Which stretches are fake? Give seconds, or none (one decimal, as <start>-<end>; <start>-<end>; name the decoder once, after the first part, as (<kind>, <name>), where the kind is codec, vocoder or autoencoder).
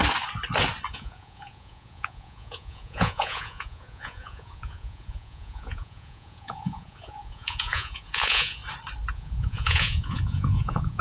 0.9-8.6 (vocoder, Vocos); 9.1-11.0